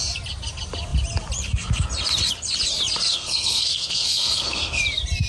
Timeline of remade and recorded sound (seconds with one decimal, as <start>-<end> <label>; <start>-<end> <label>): 0.0-3.1 recorded; 3.1-4.8 remade; 4.8-5.3 recorded

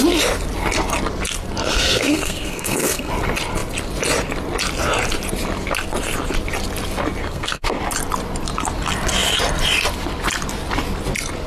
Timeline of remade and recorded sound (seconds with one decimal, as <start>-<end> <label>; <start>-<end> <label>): 0.0-1.7 recorded; 1.7-3.1 remade; 3.1-7.2 recorded; 7.2-7.8 remade; 7.8-11.5 recorded

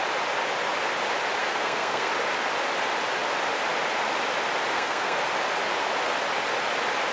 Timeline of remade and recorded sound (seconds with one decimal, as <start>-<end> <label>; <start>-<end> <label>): 0.0-1.4 recorded; 1.4-2.1 remade; 2.1-4.7 recorded; 4.7-5.2 remade; 5.2-7.1 recorded

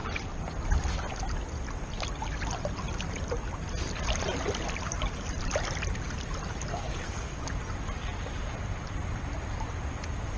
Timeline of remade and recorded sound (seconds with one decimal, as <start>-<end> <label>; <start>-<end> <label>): 0.0-6.7 recorded; 6.7-7.4 remade; 7.4-10.4 recorded

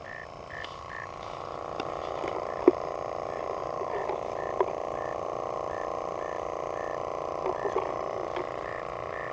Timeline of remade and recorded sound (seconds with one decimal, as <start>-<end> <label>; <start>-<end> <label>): 0.0-9.3 recorded